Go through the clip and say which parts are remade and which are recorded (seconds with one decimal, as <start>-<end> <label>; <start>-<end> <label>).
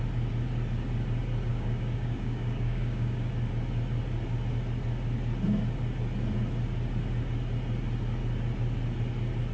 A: 0.0-1.5 recorded; 1.5-3.3 remade; 3.3-9.5 recorded